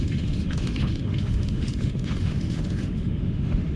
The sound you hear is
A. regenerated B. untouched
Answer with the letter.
A